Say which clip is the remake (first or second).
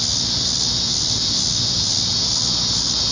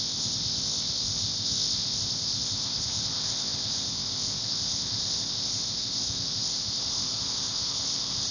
second